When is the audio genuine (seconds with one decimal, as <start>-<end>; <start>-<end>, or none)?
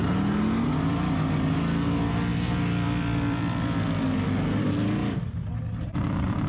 0.0-2.3; 4.6-5.0; 5.5-6.5